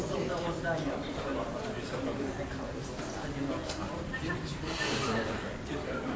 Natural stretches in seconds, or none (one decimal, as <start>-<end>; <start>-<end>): 2.5-3.4